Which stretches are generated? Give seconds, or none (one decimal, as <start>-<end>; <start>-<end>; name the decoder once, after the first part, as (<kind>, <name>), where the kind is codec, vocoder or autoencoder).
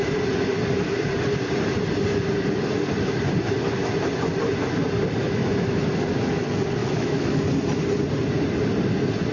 5.2-5.9 (autoencoder, DAC-VAE); 6.8-7.4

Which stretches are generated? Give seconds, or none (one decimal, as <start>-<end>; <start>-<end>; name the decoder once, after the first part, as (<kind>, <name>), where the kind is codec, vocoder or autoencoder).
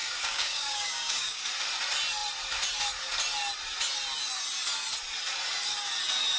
0.0-1.4 (codec, DAC)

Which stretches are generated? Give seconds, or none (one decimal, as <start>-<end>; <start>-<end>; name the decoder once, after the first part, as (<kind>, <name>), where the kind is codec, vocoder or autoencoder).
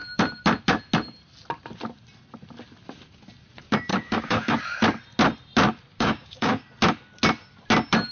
3.9-4.6 (codec, DAC); 5.9-6.6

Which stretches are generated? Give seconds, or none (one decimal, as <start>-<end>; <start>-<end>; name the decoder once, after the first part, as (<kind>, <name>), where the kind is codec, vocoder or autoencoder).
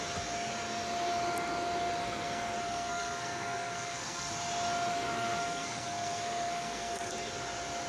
2.0-4.3 (codec, SNAC); 4.9-7.1